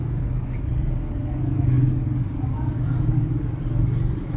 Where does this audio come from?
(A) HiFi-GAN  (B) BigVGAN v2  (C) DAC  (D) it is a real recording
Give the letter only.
C